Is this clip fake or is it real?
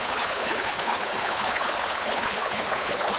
fake